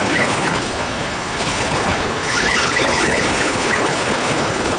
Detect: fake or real fake